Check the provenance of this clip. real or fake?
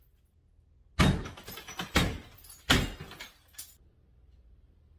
real